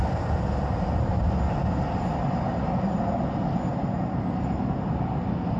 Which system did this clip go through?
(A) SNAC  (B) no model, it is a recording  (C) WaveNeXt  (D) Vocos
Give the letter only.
B